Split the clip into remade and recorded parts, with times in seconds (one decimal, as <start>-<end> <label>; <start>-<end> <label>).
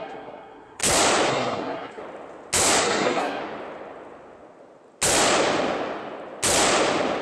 0.0-0.8 remade; 0.8-1.3 recorded; 1.3-2.0 remade; 2.0-2.8 recorded; 2.8-3.4 remade; 3.4-7.2 recorded